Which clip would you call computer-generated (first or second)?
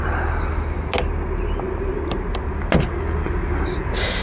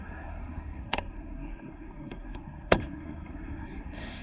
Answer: second